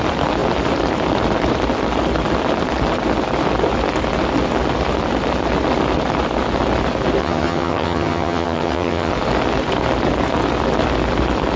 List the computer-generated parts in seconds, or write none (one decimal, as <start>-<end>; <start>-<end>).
7.2-9.1